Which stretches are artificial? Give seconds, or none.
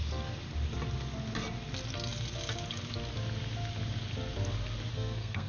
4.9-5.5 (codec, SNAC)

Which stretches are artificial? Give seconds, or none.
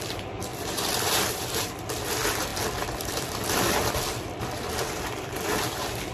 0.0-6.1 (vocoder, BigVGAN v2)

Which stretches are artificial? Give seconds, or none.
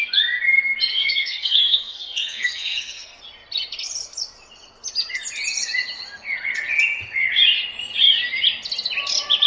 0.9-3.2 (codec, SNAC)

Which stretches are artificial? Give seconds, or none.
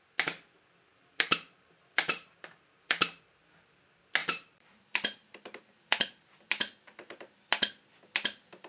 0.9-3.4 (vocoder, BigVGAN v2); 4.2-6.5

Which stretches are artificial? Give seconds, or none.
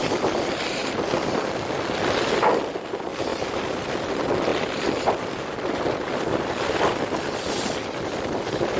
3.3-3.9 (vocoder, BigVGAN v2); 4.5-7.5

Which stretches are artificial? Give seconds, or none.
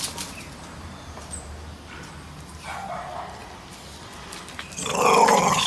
none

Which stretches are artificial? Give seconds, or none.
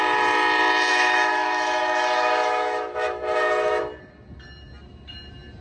0.9-3.8 (autoencoder, DAC-VAE)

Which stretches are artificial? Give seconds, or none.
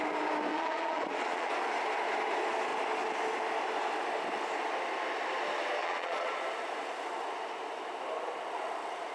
0.5-1.5 (vocoder, Vocos); 5.8-6.4